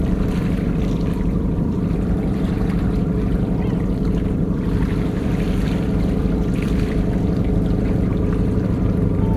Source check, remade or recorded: remade